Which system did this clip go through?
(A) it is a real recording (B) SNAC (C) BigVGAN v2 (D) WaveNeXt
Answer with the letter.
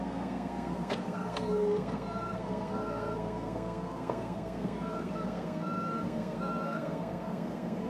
B